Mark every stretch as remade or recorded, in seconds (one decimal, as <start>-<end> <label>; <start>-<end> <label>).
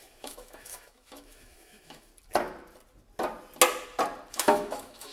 0.0-2.1 remade; 2.1-4.3 recorded; 4.3-5.1 remade